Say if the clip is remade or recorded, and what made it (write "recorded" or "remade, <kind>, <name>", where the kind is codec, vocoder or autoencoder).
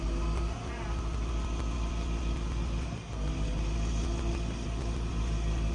recorded